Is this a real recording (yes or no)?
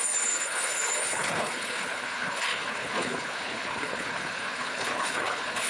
no